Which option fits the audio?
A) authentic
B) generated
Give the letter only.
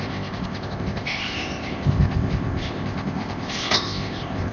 B